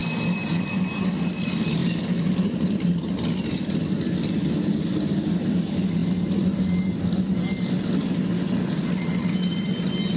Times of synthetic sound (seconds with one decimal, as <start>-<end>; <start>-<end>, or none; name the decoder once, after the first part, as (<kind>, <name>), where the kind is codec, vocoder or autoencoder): 1.8-2.9 (vocoder, BigVGAN v2)